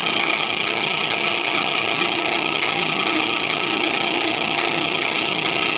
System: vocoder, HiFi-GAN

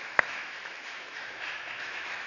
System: autoencoder, DAC-VAE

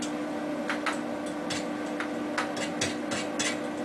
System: none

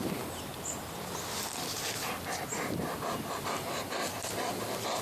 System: none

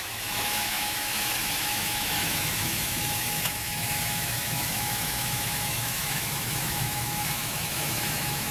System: autoencoder, DAC-VAE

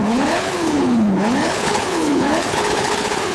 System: codec, HILCodec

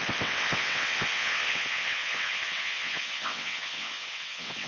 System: vocoder, WaveNeXt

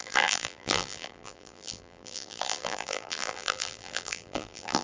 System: vocoder, BigVGAN v2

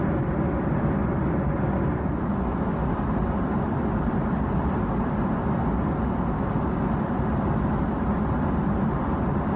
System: none